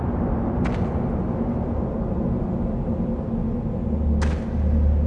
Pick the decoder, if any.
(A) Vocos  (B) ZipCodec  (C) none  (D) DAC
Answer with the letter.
C